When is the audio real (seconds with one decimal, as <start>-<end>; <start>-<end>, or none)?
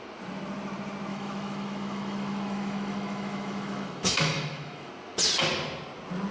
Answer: 0.0-1.1; 4.9-6.3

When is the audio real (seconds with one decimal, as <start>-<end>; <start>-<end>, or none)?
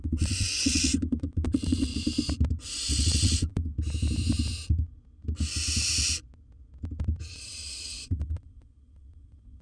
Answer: 1.9-2.9; 3.7-7.3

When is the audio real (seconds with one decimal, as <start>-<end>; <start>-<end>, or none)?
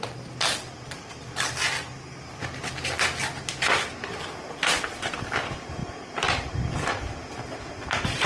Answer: 0.0-8.3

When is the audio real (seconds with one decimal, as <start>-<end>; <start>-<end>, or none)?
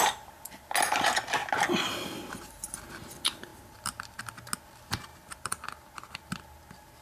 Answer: 0.0-1.4; 2.7-3.5; 4.2-5.1; 6.3-7.0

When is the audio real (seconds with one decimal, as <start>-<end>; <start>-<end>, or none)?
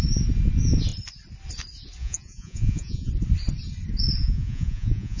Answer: 0.0-2.0; 3.1-4.2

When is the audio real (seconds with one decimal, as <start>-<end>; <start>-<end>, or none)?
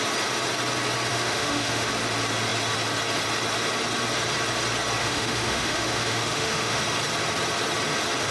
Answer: 0.0-1.1; 1.9-5.0; 6.8-8.3